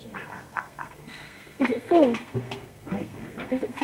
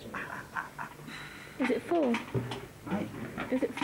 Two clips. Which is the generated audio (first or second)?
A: first